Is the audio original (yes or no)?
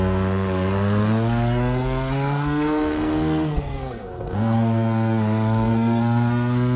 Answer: no